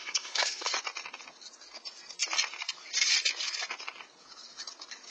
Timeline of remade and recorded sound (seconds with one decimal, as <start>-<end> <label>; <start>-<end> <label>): 0.0-0.7 remade; 0.7-5.1 recorded